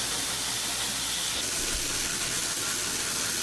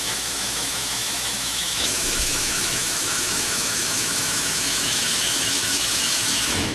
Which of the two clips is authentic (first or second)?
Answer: first